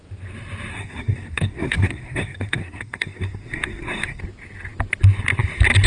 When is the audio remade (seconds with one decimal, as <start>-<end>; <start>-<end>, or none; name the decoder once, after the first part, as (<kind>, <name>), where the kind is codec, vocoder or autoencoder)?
0.7-4.2 (codec, SNAC)